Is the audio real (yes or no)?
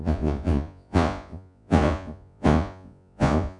no